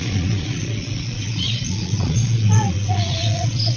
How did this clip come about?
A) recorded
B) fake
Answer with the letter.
B